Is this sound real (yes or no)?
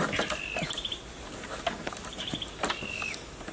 yes